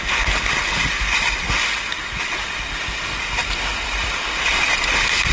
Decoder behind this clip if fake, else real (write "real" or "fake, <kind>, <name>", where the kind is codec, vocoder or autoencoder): real